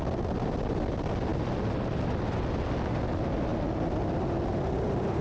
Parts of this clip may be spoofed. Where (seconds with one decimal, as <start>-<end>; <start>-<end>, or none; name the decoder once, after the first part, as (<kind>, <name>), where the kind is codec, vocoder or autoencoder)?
none